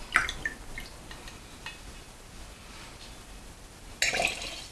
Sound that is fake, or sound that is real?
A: real